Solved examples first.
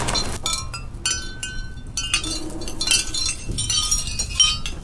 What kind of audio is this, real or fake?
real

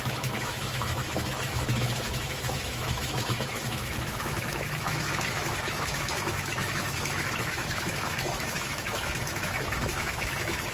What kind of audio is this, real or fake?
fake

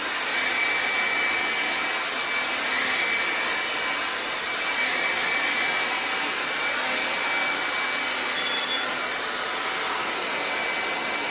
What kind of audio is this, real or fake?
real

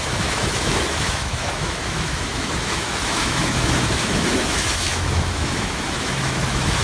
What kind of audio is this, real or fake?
fake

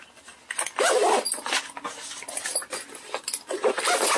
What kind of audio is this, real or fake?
real